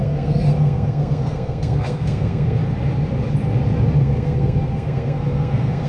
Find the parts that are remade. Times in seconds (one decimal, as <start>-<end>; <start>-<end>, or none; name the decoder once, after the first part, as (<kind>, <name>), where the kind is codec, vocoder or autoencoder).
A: 0.0-2.6 (codec, SNAC); 4.0-5.9

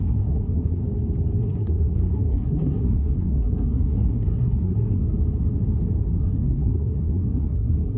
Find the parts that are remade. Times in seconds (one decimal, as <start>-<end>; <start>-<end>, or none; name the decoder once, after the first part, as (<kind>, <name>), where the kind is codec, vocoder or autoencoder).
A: 0.0-0.8 (codec, SNAC); 1.4-5.0; 6.2-8.0

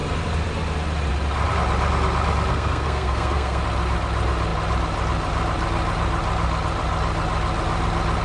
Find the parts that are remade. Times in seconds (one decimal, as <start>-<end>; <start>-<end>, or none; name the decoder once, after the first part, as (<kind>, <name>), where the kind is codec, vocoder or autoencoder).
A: 2.5-3.6 (codec, SNAC)